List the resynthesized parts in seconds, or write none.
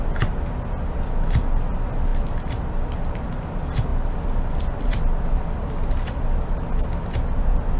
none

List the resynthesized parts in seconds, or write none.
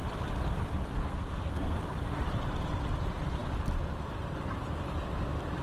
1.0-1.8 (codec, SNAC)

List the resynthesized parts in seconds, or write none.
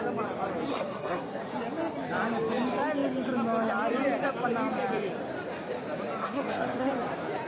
0.7-1.4 (codec, SNAC); 6.2-6.9